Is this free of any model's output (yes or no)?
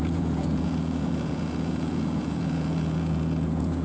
no